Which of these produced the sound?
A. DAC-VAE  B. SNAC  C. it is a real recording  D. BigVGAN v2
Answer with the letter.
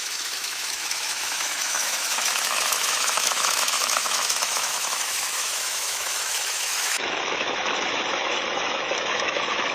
A